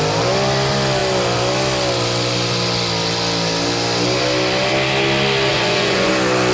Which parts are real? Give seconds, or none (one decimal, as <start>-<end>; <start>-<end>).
0.0-5.5; 6.1-6.5